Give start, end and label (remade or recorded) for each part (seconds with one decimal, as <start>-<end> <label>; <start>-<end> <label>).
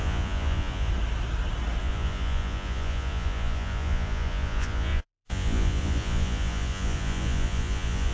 0.0-0.9 remade; 0.9-1.8 recorded; 1.8-8.1 remade